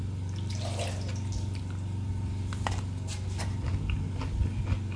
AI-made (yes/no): no